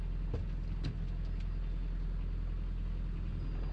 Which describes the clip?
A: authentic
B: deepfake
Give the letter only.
A